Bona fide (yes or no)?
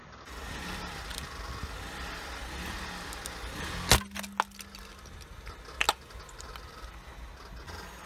yes